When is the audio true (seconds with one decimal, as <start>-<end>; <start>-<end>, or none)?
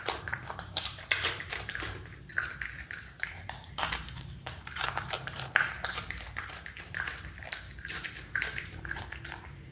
2.3-3.0